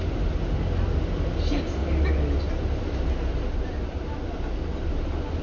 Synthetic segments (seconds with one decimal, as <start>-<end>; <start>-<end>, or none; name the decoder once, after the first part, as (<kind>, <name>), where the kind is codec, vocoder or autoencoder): none